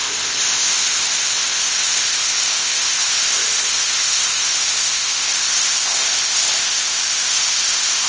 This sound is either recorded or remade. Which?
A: remade